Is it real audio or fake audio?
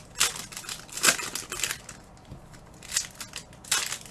real